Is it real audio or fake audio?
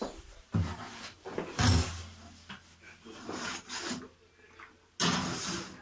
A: real